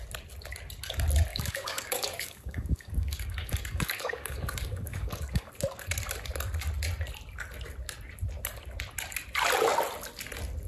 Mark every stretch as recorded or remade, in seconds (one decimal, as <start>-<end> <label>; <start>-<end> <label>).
0.0-1.3 recorded; 1.3-5.5 remade; 5.5-10.7 recorded